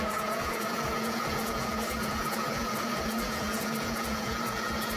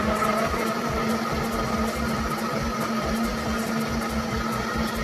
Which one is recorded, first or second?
second